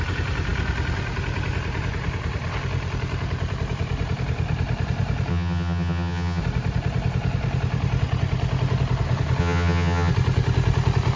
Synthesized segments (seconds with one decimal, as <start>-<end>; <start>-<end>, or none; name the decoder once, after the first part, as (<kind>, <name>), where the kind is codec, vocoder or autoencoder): 5.3-6.4 (vocoder, HiFi-GAN); 9.4-10.1